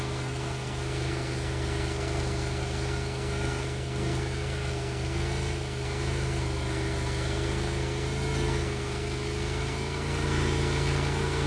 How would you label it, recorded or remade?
remade